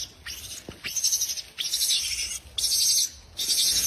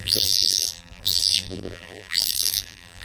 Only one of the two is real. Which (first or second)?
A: first